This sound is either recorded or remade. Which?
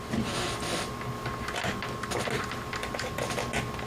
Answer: recorded